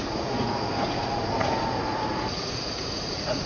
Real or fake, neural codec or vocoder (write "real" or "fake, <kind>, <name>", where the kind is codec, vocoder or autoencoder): fake, vocoder, Vocos